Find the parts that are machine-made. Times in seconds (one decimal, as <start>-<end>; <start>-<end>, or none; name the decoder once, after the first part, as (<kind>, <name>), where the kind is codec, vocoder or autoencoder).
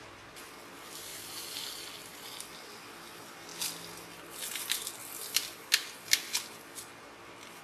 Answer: none